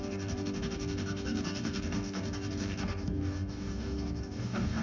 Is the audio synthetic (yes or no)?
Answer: yes